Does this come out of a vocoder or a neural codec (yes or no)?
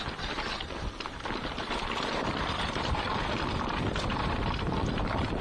yes